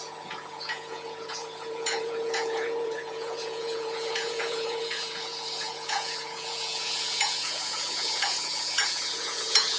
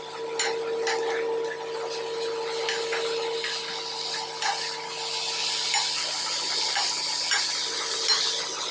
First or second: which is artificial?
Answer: first